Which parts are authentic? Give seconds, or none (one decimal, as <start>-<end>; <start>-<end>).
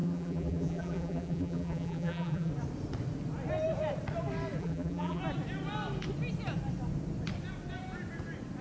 2.5-4.6; 5.2-8.6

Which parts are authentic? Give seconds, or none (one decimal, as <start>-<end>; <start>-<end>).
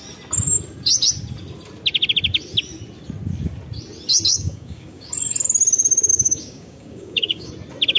0.0-4.3; 5.1-6.1; 7.5-8.0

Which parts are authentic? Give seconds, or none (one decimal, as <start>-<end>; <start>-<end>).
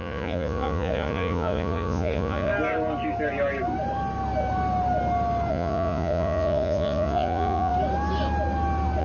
2.5-5.5; 7.7-9.0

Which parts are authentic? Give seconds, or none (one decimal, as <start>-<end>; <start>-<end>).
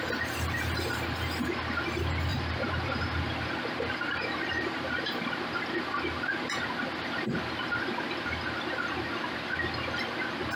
0.0-2.3; 3.0-4.5; 5.3-10.6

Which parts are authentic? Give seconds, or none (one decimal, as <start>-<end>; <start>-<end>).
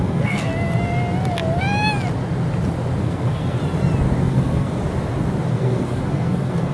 0.5-3.0; 3.6-4.2; 4.8-5.5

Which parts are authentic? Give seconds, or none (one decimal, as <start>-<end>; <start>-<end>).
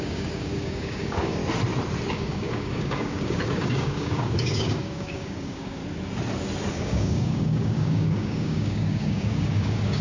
1.4-2.1; 5.8-6.7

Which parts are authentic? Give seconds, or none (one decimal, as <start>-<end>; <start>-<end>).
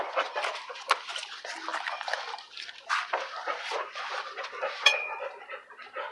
0.0-1.7; 5.4-6.1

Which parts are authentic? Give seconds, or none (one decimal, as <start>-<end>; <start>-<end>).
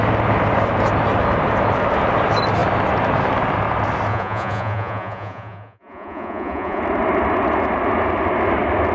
0.0-4.1; 6.8-8.9